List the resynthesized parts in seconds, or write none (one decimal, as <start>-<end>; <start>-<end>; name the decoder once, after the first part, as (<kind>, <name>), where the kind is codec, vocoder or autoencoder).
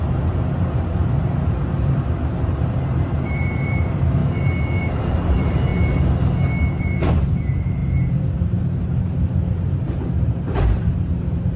0.0-4.2 (vocoder, BigVGAN v2); 4.8-5.7; 6.8-11.6